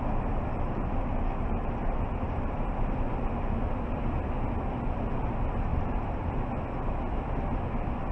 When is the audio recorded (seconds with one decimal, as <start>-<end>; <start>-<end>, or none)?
0.0-0.5; 2.7-5.7; 6.3-8.1